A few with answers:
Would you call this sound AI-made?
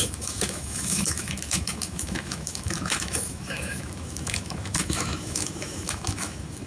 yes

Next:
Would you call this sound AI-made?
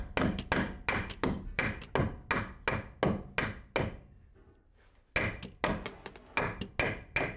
no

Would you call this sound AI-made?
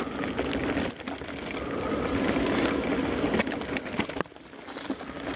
no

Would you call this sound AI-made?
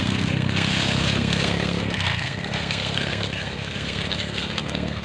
yes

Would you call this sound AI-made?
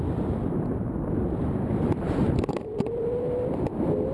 no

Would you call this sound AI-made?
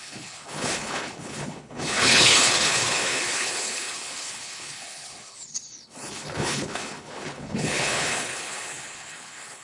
yes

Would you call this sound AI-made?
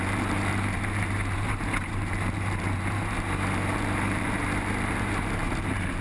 yes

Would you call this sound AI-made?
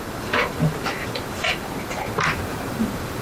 yes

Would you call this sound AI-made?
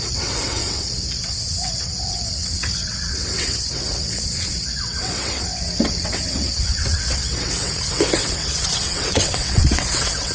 yes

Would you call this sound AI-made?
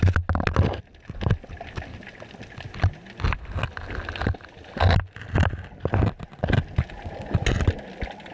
no